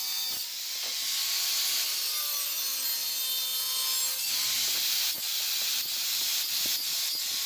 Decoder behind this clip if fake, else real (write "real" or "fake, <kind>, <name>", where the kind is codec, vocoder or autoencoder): real